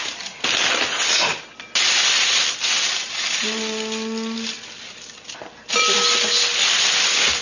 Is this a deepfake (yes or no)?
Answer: no